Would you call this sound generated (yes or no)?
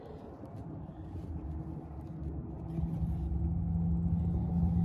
no